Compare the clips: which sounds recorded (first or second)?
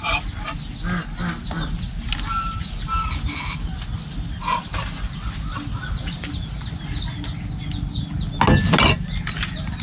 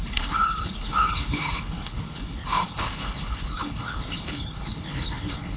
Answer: first